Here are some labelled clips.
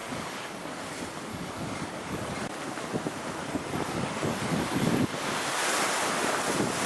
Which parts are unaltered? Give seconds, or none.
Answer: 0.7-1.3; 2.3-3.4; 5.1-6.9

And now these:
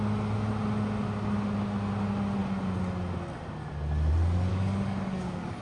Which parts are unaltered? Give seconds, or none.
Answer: 0.0-4.5

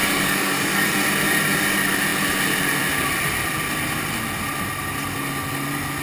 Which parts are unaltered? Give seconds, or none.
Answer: 0.9-6.0

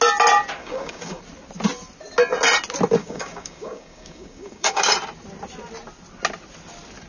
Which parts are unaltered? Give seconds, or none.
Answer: 0.0-0.6; 1.2-3.0; 4.9-7.1

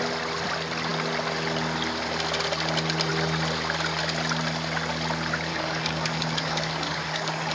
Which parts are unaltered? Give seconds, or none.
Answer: 0.0-5.5

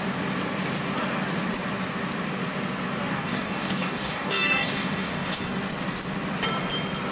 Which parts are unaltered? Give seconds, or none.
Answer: 0.0-3.1; 5.4-7.1

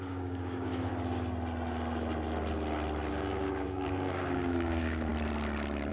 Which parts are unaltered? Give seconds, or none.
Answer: 0.9-3.1; 5.1-5.9